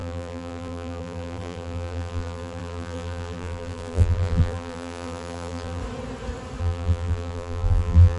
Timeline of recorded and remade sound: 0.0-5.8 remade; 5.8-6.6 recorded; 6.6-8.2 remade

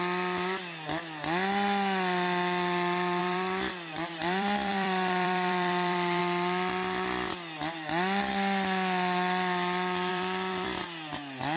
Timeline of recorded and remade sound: 0.0-3.2 recorded; 3.2-6.2 remade; 6.2-10.1 recorded; 10.1-10.8 remade; 10.8-11.6 recorded

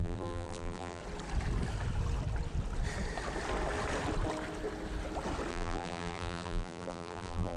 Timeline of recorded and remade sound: 0.0-1.0 remade; 1.0-5.5 recorded; 5.5-7.6 remade